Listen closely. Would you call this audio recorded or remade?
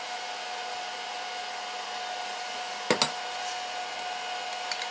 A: recorded